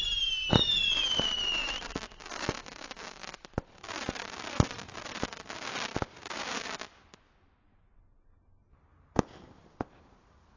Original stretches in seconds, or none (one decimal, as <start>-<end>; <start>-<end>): 0.0-2.2; 3.3-10.6